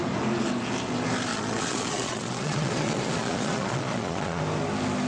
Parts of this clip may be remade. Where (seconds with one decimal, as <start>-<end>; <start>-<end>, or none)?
1.3-4.4